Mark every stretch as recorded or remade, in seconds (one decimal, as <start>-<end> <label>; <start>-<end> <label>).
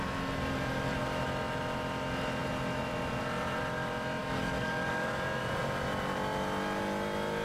0.0-4.2 recorded; 4.2-5.4 remade; 5.4-7.4 recorded